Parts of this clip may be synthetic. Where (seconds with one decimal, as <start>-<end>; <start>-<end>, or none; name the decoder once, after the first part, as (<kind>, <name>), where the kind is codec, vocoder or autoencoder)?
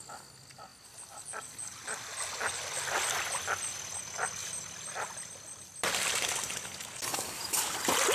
4.4-5.9 (vocoder, BigVGAN v2)